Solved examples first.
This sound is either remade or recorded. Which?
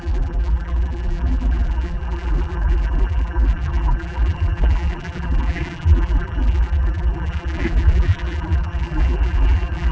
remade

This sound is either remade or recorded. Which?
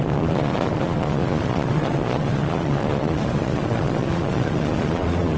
remade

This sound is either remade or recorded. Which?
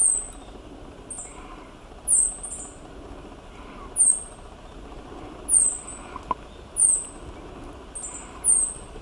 recorded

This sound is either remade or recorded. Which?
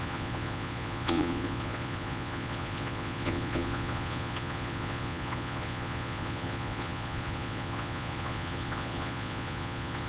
remade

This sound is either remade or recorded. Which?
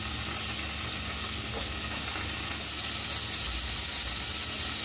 recorded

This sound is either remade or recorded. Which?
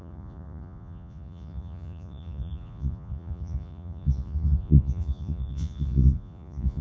remade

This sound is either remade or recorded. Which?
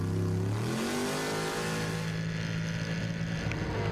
recorded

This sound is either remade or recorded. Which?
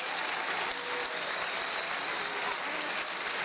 recorded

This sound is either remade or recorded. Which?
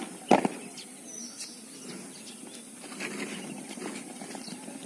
recorded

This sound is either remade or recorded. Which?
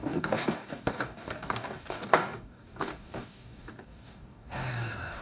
remade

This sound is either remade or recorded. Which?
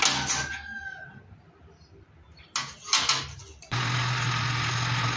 recorded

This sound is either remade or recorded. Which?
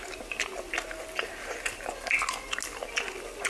recorded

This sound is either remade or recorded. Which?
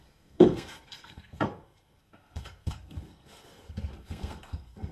remade